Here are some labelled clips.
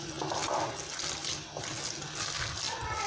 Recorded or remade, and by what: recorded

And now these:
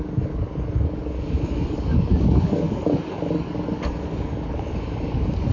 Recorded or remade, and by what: remade, codec, DAC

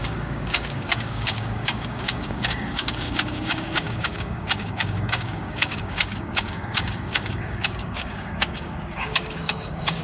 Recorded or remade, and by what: remade, codec, DAC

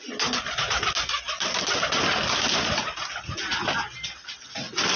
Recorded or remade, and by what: recorded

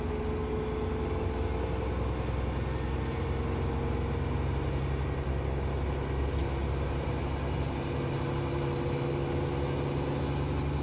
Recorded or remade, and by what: recorded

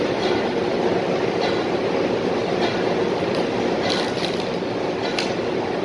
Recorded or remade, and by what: recorded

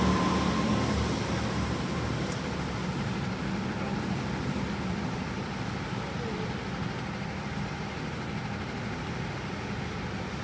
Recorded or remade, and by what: recorded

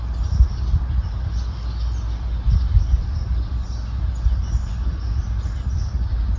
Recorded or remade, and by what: recorded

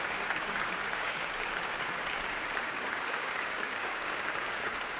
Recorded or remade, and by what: remade, codec, DAC